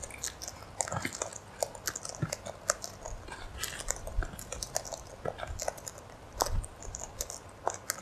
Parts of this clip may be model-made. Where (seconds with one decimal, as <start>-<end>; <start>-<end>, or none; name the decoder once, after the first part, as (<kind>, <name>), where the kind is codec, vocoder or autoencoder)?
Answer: none